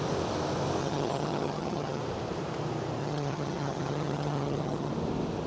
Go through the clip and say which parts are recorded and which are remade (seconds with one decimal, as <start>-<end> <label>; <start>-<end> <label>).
0.0-0.8 recorded; 0.8-2.0 remade; 2.0-3.0 recorded; 3.0-4.9 remade; 4.9-5.5 recorded

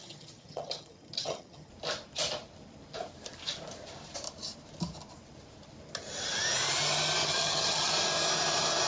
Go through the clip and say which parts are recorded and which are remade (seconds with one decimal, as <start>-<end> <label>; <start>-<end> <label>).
0.0-1.7 remade; 1.7-7.2 recorded; 7.2-7.9 remade; 7.9-8.9 recorded

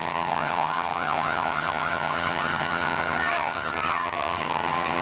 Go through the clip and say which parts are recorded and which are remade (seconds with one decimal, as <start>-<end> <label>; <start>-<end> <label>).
0.0-5.0 remade

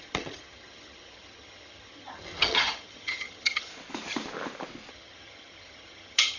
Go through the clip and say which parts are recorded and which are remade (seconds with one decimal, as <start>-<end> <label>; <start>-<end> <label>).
0.0-3.7 remade; 3.7-4.9 recorded; 4.9-6.4 remade

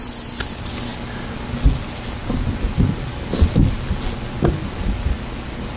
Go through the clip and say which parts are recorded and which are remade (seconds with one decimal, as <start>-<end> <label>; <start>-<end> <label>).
0.0-5.8 recorded

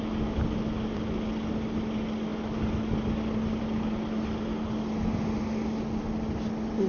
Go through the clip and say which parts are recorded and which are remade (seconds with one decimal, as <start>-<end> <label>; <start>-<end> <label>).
0.0-6.9 recorded